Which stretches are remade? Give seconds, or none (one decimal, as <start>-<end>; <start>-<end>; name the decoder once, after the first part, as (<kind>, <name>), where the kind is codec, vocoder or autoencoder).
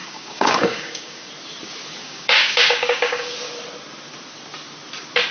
0.0-1.3 (codec, DAC); 2.0-3.3